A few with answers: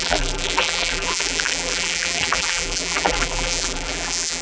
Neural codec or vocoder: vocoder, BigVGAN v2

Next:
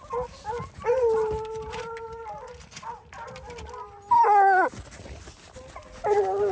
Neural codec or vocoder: none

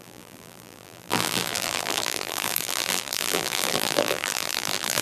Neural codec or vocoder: vocoder, BigVGAN v2